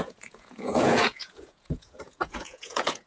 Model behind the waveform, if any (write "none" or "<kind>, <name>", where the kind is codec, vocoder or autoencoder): vocoder, Vocos